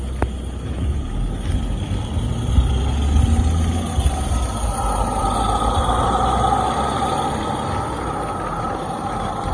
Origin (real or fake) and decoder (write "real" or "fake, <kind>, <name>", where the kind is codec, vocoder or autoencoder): real